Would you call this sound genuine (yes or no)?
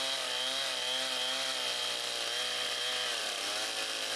yes